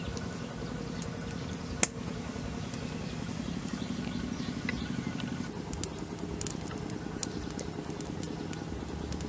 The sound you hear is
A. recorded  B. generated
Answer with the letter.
A